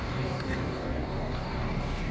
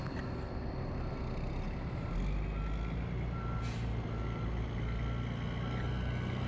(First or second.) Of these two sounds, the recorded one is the second